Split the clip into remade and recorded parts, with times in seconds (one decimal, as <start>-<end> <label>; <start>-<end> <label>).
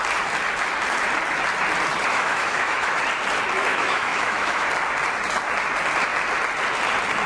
0.0-2.1 recorded; 2.1-3.0 remade; 3.0-3.7 recorded; 3.7-4.7 remade; 4.7-7.3 recorded